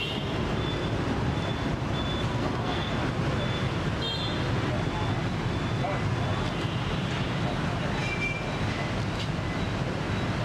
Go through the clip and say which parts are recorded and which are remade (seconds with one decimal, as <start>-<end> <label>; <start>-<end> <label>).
0.0-2.3 recorded; 2.3-2.9 remade; 2.9-10.4 recorded

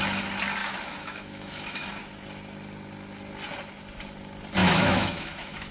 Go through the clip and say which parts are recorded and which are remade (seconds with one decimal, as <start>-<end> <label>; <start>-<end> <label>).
0.0-0.6 recorded; 0.6-1.9 remade; 1.9-4.6 recorded; 4.6-5.7 remade

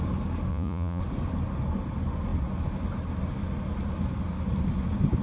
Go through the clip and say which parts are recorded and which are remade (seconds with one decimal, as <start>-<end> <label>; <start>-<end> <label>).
0.0-0.5 recorded; 0.5-1.0 remade; 1.0-5.2 recorded

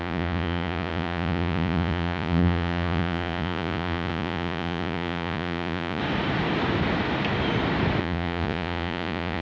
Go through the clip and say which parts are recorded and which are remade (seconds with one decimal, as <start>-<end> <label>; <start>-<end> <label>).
0.0-6.0 remade; 6.0-8.0 recorded; 8.0-9.4 remade

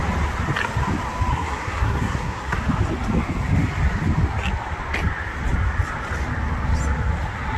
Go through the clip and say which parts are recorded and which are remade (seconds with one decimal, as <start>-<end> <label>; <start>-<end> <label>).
0.0-1.3 recorded; 1.3-2.6 remade; 2.6-7.6 recorded